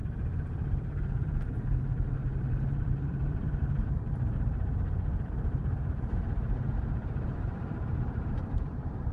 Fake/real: fake